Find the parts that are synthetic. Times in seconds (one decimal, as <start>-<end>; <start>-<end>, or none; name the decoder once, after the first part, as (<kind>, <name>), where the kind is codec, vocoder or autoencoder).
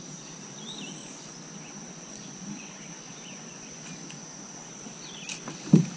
1.0-4.6 (vocoder, Vocos)